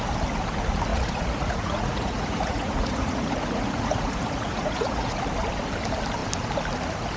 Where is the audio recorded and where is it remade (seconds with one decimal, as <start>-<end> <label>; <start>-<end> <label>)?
0.0-0.9 recorded; 0.9-5.2 remade; 5.2-7.2 recorded